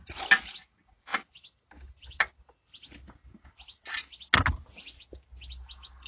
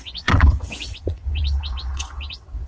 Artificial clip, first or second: second